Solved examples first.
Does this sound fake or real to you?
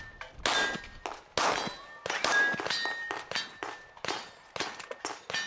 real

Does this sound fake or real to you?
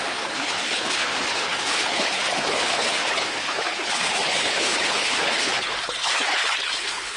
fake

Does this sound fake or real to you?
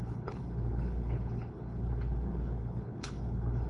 fake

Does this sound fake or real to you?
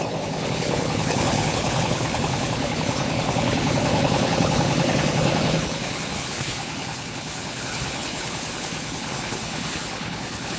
fake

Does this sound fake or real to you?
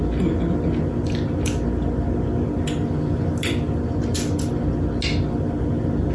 real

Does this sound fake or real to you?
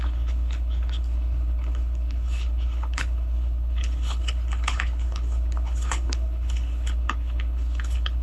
fake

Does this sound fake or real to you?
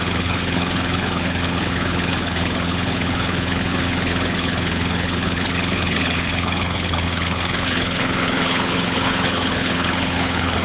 fake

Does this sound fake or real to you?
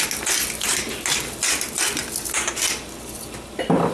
real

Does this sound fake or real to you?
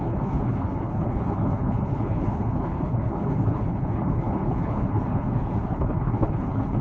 fake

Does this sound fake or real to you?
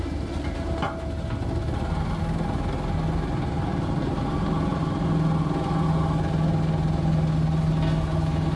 real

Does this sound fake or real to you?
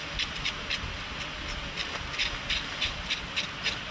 real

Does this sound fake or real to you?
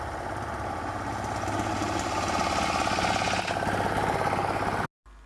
real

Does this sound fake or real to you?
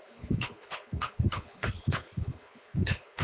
fake